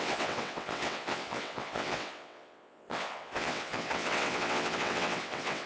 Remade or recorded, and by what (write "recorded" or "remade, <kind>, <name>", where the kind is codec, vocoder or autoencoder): remade, vocoder, WaveNeXt